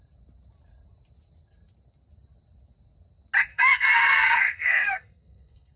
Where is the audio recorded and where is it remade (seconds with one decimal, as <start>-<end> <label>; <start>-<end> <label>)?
0.0-3.5 recorded; 3.5-5.8 remade